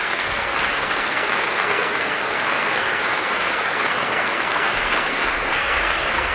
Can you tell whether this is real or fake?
fake